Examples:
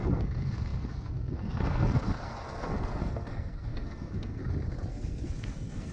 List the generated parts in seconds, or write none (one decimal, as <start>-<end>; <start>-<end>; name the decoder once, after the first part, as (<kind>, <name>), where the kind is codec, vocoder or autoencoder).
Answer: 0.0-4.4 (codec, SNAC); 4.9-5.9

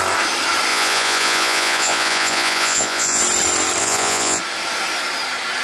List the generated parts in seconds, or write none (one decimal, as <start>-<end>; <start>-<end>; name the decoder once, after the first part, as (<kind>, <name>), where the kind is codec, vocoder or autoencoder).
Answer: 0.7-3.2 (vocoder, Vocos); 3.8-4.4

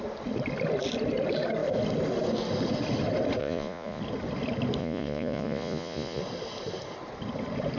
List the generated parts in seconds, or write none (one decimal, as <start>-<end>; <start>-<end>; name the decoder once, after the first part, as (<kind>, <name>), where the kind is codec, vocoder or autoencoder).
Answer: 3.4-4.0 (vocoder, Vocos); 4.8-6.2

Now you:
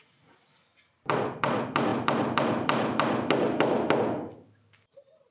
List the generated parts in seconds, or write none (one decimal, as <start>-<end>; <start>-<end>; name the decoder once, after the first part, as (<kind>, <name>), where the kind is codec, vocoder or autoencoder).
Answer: none